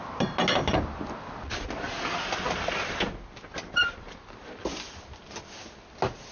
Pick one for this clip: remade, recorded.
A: recorded